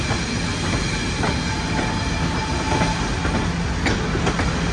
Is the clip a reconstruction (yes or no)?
no